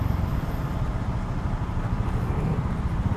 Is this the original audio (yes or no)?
yes